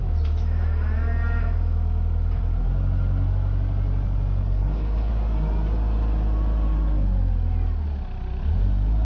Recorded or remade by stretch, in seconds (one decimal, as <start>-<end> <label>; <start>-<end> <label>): 0.0-4.4 recorded; 4.4-5.1 remade; 5.1-9.0 recorded